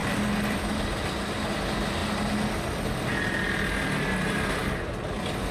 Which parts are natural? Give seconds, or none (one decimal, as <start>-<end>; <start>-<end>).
0.0-5.5